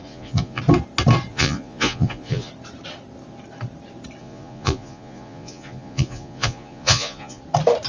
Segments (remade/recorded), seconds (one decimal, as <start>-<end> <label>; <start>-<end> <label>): 0.0-0.6 remade; 0.6-1.3 recorded; 1.3-2.5 remade; 2.5-4.2 recorded; 4.2-7.4 remade; 7.4-7.9 recorded

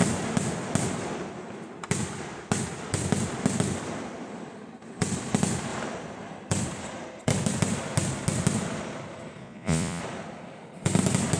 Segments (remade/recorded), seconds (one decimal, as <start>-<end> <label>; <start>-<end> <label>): 0.0-9.4 recorded; 9.4-10.0 remade; 10.0-11.4 recorded